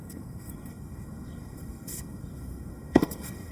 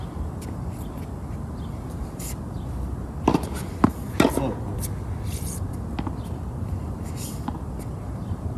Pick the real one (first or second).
second